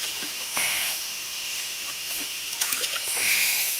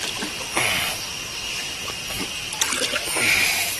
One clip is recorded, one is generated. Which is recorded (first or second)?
second